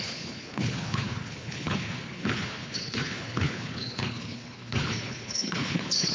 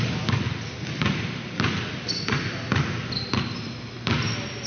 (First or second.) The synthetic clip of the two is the first